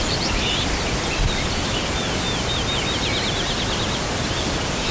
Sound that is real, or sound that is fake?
fake